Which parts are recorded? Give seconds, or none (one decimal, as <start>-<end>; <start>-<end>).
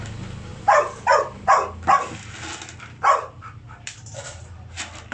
0.0-2.5; 4.1-5.1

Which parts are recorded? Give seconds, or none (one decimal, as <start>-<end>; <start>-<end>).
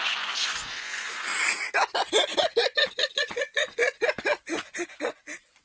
1.3-3.1; 3.8-4.4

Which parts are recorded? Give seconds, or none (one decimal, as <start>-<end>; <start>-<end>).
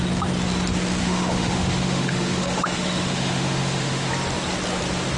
0.0-1.0; 4.1-5.2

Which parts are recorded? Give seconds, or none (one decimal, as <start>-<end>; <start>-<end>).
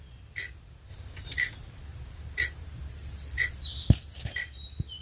0.0-0.9; 3.9-5.0